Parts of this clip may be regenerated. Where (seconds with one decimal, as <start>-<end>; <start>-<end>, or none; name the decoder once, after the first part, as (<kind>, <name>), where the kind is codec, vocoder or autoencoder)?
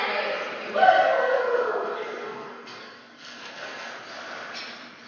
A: 0.8-3.9 (codec, SNAC)